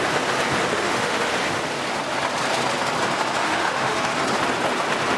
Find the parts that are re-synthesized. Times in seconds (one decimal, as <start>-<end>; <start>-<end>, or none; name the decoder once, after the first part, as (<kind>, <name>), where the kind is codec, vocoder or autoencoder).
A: 0.7-1.3 (autoencoder, DAC-VAE); 3.4-4.1